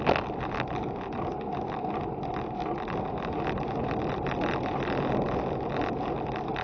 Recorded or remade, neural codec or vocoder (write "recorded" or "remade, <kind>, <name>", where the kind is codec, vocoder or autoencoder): recorded